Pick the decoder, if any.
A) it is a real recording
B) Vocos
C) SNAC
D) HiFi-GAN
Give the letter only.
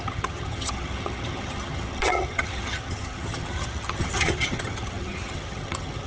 D